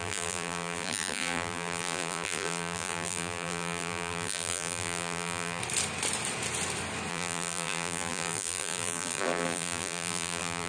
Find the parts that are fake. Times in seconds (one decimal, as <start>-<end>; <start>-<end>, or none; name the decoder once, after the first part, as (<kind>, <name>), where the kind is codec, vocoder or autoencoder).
0.0-5.6 (vocoder, BigVGAN v2); 7.1-10.7